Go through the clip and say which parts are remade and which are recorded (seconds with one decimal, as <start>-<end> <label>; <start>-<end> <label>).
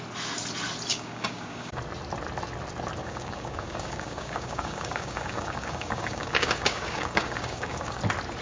0.0-0.9 recorded; 0.9-1.8 remade; 1.8-3.0 recorded; 3.0-8.0 remade; 8.0-8.4 recorded